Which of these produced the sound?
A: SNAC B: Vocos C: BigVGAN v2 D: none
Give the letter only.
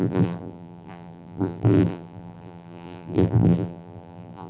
C